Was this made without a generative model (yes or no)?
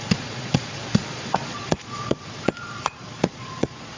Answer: no